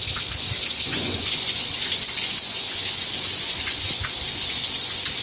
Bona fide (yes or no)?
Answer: no